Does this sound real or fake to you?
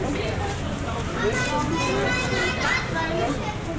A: real